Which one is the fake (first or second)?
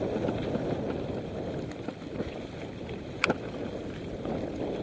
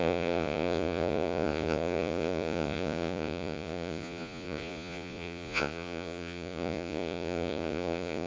second